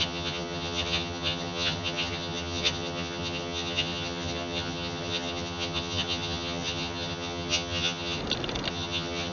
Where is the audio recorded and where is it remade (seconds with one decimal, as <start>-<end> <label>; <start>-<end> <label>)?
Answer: 0.0-8.2 remade; 8.2-8.7 recorded; 8.7-9.3 remade